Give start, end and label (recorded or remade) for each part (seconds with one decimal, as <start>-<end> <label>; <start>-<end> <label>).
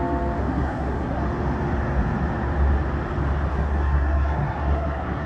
0.0-0.4 recorded; 0.4-1.2 remade; 1.2-3.5 recorded; 3.5-5.3 remade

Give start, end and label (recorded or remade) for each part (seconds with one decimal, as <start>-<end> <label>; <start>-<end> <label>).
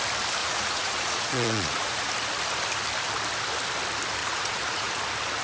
0.0-0.4 recorded; 0.4-2.1 remade; 2.1-4.2 recorded; 4.2-5.0 remade; 5.0-5.4 recorded